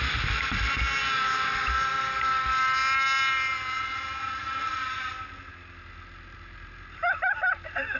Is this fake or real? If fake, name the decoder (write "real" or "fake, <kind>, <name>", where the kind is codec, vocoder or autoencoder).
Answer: real